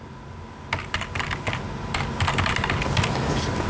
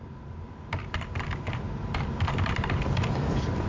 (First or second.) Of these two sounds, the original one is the first